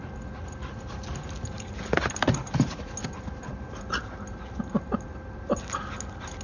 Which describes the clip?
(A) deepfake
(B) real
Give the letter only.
B